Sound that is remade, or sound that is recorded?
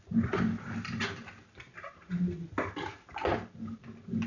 recorded